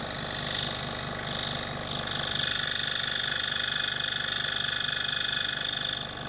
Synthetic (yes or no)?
no